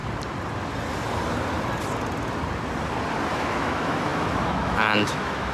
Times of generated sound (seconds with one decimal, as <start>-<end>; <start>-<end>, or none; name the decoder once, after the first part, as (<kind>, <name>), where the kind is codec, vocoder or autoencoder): 3.3-5.5 (autoencoder, DAC-VAE)